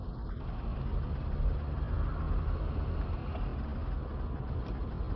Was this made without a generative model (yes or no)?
yes